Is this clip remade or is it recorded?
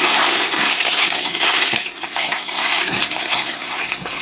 remade